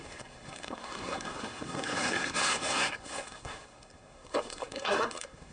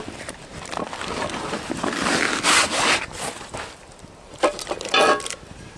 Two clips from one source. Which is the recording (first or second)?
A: second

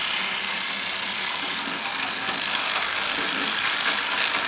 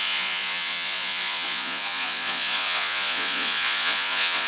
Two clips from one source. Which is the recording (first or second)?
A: first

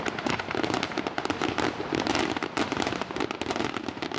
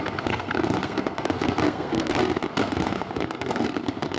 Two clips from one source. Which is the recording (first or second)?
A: first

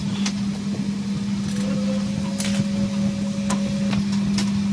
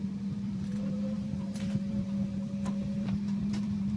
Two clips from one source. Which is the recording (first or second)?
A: first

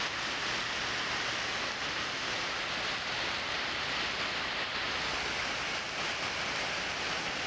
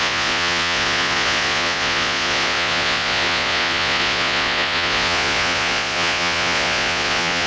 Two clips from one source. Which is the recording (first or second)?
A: first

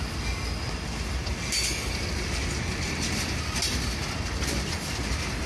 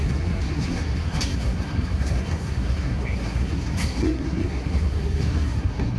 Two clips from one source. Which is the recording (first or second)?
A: first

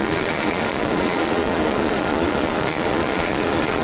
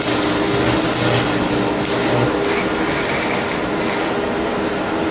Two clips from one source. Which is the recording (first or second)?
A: second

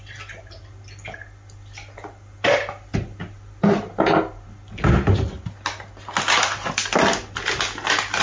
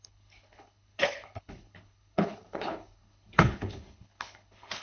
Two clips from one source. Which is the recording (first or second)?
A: first